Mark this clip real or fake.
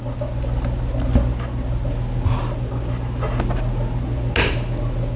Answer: real